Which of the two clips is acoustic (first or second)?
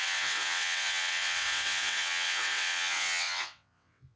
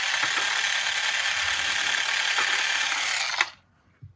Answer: second